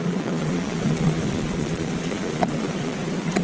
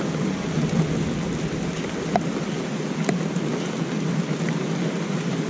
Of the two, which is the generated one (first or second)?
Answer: first